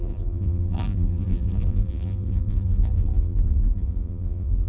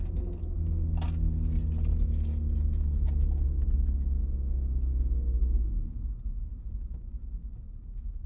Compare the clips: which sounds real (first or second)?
second